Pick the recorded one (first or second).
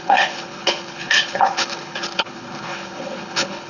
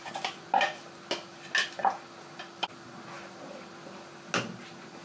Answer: second